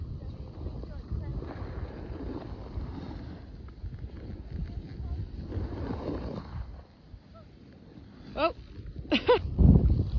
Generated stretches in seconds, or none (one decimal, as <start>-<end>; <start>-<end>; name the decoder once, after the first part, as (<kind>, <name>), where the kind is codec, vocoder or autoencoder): none